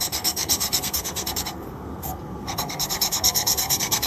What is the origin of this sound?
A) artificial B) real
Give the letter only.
A